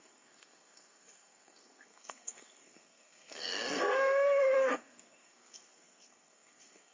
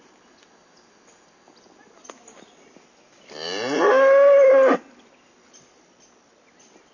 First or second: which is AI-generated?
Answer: first